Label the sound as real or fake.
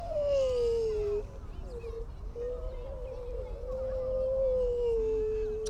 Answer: real